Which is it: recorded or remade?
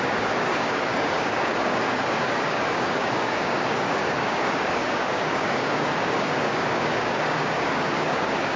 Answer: remade